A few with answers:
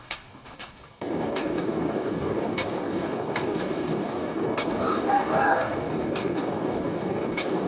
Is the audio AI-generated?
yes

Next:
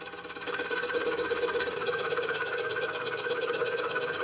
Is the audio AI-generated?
yes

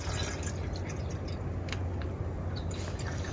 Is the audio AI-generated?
no